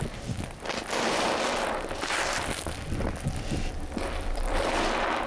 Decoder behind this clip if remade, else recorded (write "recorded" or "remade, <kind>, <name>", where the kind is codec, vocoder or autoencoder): recorded